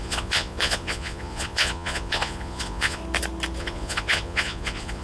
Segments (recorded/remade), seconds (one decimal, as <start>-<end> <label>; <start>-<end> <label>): 0.0-3.0 remade; 3.0-3.6 recorded; 3.6-5.0 remade

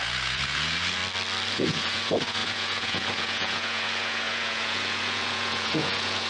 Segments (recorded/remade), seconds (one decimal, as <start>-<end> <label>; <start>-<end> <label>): 0.0-1.0 remade; 1.0-1.5 recorded; 1.5-6.3 remade

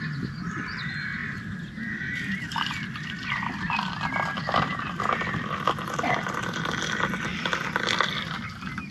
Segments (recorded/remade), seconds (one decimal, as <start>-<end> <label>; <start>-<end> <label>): 0.0-8.9 recorded